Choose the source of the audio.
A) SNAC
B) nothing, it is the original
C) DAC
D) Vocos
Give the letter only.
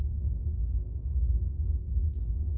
A